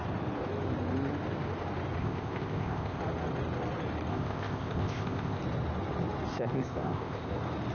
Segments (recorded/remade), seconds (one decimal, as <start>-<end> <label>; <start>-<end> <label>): 0.0-2.0 recorded; 2.0-3.0 remade; 3.0-4.1 recorded; 4.1-5.4 remade; 5.4-6.3 recorded; 6.3-7.3 remade; 7.3-7.7 recorded